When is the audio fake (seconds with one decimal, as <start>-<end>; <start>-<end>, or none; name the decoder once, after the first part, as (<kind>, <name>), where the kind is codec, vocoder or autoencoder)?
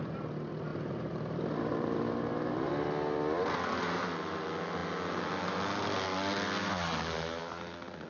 0.7-2.7 (vocoder, BigVGAN v2)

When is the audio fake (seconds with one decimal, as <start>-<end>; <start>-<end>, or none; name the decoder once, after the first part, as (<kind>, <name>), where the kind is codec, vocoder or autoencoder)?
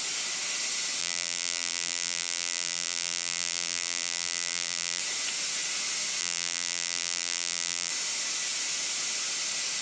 1.0-5.0 (vocoder, BigVGAN v2); 6.2-7.9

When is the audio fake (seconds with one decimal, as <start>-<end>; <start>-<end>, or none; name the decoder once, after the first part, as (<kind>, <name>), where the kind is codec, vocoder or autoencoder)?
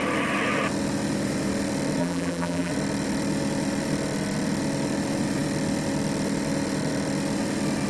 2.0-2.7 (vocoder, BigVGAN v2)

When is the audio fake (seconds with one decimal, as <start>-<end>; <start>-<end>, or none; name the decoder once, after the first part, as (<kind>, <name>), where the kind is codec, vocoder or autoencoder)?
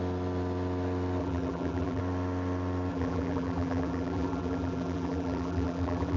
1.2-2.0 (vocoder, BigVGAN v2); 2.9-6.2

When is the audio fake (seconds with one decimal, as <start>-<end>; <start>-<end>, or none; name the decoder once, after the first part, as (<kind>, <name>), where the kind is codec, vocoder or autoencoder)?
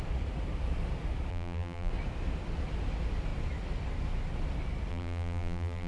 1.3-1.9 (vocoder, BigVGAN v2); 4.9-5.9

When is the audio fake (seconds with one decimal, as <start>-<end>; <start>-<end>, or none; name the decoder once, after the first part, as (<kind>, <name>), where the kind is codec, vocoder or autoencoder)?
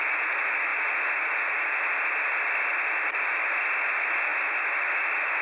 0.0-0.7 (vocoder, BigVGAN v2); 1.7-4.3; 4.8-5.4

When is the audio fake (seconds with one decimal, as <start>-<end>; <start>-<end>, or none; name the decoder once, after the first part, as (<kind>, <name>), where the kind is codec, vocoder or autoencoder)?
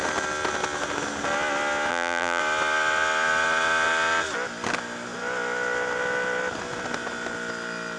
1.9-2.4 (vocoder, BigVGAN v2)